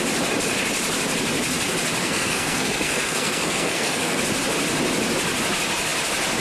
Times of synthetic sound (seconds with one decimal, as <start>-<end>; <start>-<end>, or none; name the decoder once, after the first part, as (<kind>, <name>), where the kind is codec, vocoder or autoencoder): 2.0-4.2 (codec, SNAC)